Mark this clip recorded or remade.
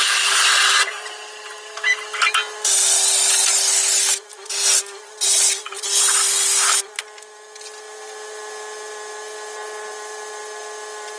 recorded